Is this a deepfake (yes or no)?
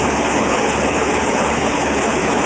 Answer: yes